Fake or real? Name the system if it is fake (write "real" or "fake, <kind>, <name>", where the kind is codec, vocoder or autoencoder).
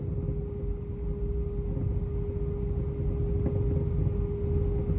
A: real